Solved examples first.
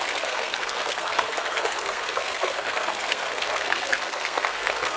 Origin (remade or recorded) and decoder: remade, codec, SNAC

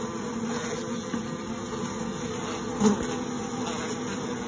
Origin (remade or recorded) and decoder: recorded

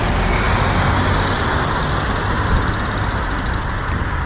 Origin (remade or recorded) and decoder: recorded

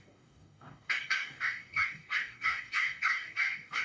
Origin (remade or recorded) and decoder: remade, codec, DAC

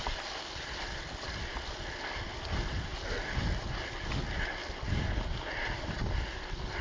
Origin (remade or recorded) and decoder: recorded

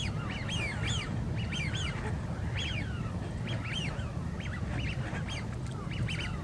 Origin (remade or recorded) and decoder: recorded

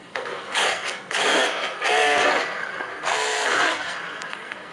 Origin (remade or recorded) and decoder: remade, codec, SNAC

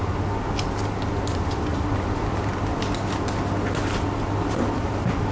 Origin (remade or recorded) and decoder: recorded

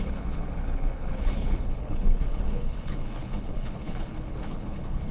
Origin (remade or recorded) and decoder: remade, codec, HILCodec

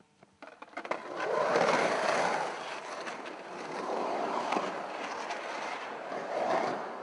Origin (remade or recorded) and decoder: remade, vocoder, BigVGAN v2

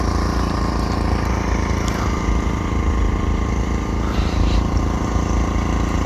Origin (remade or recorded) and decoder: remade, vocoder, BigVGAN v2